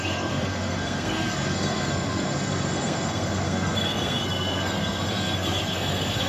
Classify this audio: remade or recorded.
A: remade